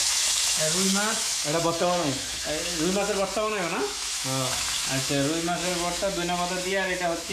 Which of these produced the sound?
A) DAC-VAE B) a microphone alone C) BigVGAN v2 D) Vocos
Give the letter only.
A